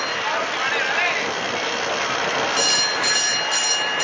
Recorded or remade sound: recorded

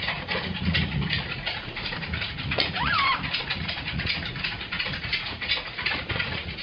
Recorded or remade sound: remade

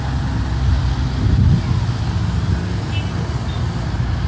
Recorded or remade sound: recorded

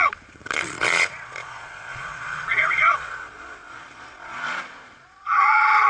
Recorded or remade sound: remade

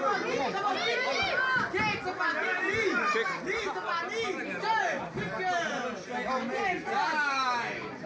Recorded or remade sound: recorded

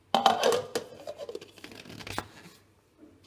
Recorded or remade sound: recorded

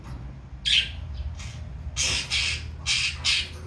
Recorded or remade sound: recorded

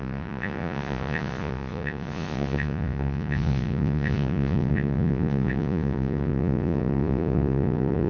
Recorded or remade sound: remade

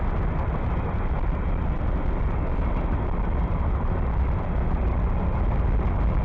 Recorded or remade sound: recorded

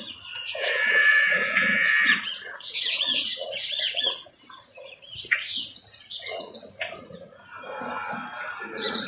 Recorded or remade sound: remade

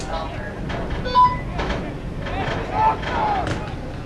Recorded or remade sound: recorded